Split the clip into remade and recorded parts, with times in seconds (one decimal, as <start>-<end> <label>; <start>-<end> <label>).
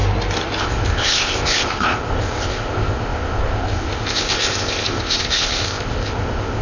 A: 0.0-0.6 recorded; 0.6-6.6 remade